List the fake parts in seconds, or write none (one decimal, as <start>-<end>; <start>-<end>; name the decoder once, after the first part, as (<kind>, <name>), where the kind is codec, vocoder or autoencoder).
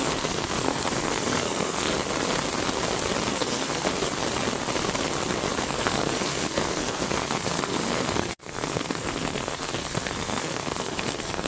0.0-1.9 (codec, SNAC); 3.3-3.9; 5.6-11.5